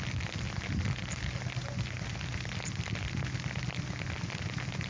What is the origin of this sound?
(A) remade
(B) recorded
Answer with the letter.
B